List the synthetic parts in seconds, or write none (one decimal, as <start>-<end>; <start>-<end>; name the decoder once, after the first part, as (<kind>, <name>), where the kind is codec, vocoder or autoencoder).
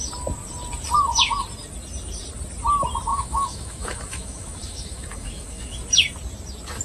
3.1-5.8 (autoencoder, DAC-VAE)